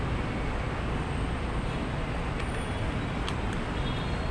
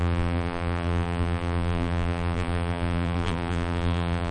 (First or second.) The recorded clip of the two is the first